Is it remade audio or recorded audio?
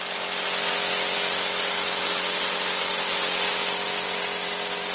recorded